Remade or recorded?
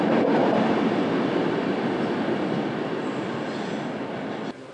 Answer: recorded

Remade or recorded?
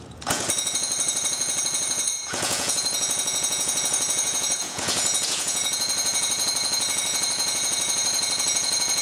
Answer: remade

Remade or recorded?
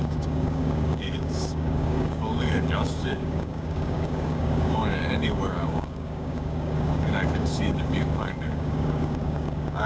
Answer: remade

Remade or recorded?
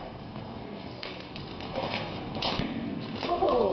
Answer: remade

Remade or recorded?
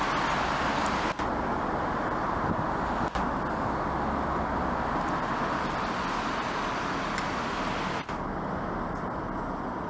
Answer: recorded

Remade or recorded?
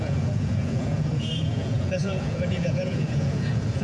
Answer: remade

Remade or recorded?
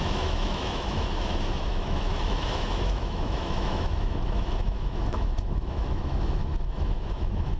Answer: remade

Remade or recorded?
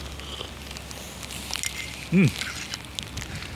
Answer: recorded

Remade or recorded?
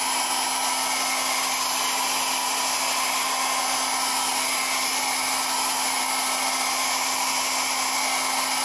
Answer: recorded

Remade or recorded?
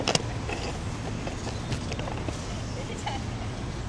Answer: recorded